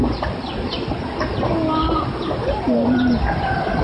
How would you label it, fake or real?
real